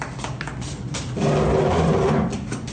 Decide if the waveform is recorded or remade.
recorded